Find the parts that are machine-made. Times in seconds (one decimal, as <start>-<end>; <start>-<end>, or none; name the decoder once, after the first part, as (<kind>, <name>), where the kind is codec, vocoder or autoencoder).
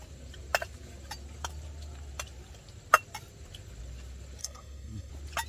4.4-5.1 (codec, SNAC)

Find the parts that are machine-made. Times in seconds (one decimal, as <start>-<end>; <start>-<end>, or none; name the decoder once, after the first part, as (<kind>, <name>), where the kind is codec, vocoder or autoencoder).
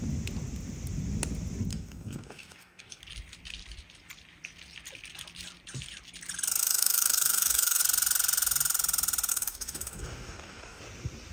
1.7-3.0 (codec, DAC); 6.6-7.8; 9.3-10.8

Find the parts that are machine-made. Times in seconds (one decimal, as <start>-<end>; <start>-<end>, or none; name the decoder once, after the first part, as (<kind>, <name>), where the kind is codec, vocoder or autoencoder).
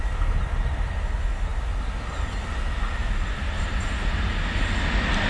none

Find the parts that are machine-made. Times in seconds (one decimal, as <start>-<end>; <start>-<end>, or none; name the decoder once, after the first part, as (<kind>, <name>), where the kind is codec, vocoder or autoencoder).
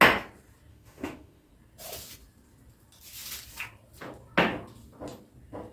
0.7-1.5 (autoencoder, DAC-VAE)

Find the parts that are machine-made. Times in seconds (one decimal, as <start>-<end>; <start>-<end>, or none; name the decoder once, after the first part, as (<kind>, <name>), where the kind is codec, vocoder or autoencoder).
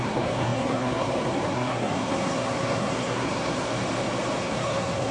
0.0-3.7 (codec, SNAC); 4.4-5.1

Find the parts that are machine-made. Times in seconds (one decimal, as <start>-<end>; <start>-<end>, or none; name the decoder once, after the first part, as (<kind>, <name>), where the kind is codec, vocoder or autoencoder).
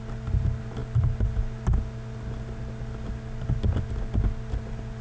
none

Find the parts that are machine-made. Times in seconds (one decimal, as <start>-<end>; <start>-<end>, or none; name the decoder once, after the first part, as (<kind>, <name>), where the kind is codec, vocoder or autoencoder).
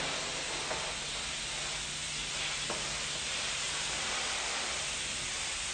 none